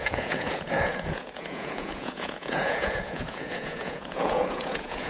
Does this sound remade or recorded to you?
remade